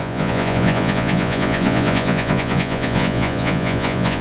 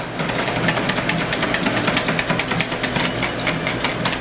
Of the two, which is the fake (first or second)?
first